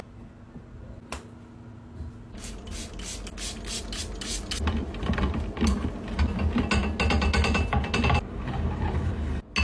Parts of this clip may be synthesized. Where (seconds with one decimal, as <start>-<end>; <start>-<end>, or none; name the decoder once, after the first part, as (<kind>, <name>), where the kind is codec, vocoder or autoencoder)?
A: none